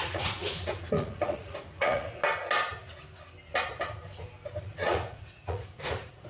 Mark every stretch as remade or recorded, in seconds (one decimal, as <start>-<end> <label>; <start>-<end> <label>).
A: 0.0-2.2 remade; 2.2-4.6 recorded; 4.6-6.3 remade